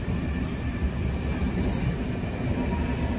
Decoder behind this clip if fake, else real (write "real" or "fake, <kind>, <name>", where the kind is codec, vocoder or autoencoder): real